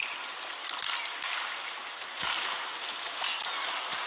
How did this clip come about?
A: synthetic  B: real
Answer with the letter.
B